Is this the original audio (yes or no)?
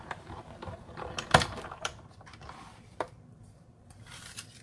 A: no